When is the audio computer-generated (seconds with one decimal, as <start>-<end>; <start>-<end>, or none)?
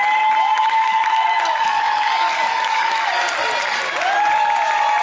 0.4-3.4